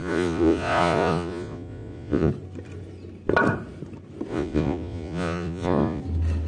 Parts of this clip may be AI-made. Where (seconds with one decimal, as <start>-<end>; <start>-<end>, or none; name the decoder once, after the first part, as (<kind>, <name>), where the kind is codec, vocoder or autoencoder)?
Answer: 0.0-2.3 (vocoder, Vocos); 4.3-6.0